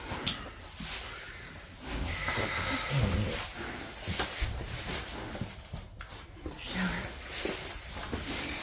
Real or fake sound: real